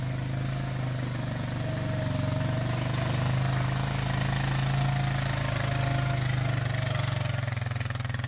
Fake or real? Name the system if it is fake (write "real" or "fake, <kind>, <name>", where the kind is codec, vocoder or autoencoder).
real